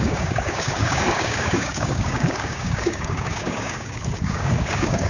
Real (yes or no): no